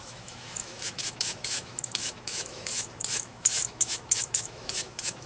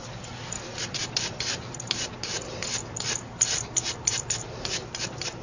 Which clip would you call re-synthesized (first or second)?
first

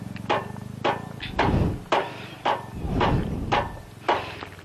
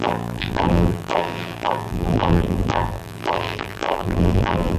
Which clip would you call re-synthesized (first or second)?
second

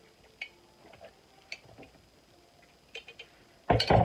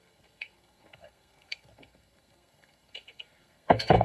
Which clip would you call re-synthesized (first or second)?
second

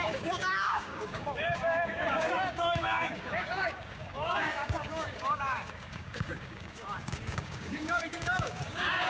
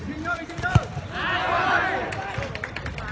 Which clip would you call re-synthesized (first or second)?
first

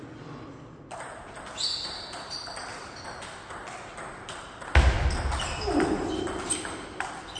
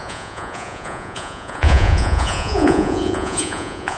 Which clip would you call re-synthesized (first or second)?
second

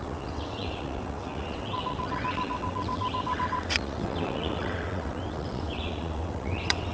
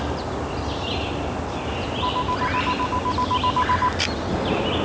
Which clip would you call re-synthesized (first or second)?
first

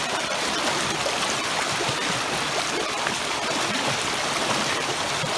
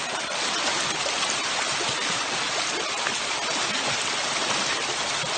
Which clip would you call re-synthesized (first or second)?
first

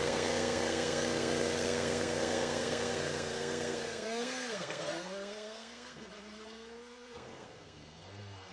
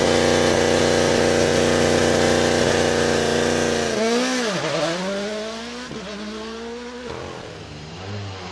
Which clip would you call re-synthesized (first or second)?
first